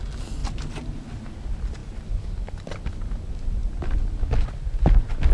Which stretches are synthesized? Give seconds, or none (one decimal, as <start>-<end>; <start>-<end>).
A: none